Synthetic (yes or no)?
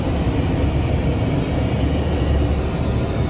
no